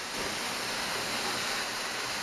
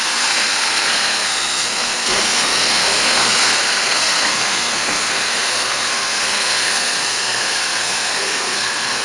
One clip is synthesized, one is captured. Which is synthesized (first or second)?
second